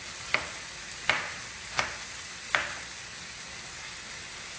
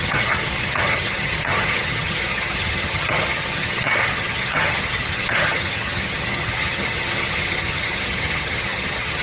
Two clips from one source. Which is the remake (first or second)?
second